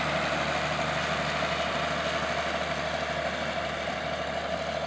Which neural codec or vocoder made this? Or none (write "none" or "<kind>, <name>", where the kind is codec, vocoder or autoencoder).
none